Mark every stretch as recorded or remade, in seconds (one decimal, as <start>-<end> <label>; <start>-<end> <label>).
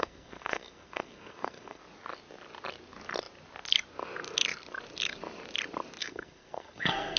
0.0-1.8 remade; 1.8-6.0 recorded; 6.0-7.2 remade